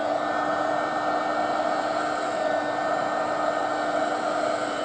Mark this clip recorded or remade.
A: recorded